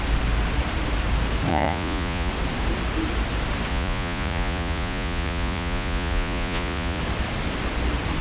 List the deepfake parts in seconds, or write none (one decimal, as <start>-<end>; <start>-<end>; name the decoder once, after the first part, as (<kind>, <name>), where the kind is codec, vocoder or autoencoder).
1.5-2.3 (vocoder, Vocos); 3.7-7.0

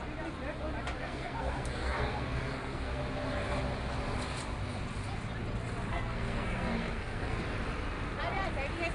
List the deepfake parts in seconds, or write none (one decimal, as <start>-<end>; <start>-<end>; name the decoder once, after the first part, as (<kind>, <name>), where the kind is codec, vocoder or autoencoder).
1.0-3.0 (codec, SNAC); 5.9-7.4

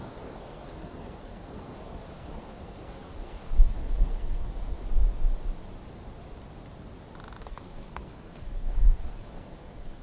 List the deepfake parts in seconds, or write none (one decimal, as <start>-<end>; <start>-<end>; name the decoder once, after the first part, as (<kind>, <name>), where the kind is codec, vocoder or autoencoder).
0.0-4.8 (codec, SNAC); 7.4-10.0

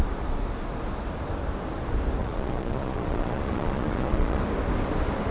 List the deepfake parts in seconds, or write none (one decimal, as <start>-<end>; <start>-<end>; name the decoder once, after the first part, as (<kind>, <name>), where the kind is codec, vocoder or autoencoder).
2.2-4.4 (vocoder, Vocos)